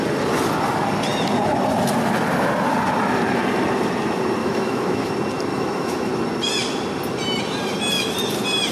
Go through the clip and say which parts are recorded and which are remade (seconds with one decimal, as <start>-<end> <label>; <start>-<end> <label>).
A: 0.0-4.4 recorded; 4.4-5.1 remade; 5.1-5.5 recorded; 5.5-6.1 remade; 6.1-8.7 recorded